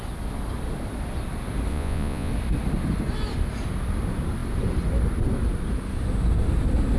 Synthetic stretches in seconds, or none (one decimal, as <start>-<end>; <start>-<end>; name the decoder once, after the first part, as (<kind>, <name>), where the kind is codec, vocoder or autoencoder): 1.7-2.3 (vocoder, Vocos)